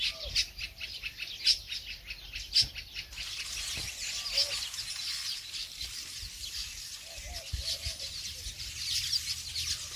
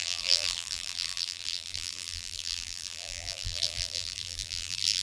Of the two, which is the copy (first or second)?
second